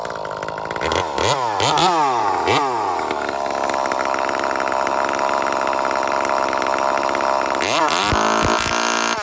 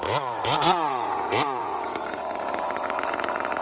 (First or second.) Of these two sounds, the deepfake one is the second